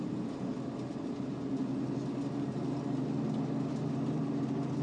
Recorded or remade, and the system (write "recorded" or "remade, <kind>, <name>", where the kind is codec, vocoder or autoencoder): recorded